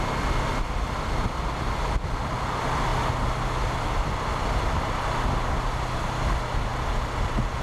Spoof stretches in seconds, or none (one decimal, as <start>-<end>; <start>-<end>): none